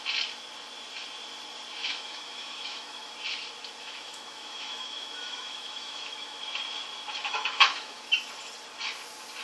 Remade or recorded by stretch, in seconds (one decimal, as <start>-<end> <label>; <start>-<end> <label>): 0.0-1.8 recorded; 1.8-3.1 remade; 3.1-3.8 recorded; 3.8-6.4 remade; 6.4-7.2 recorded; 7.2-8.0 remade; 8.0-9.4 recorded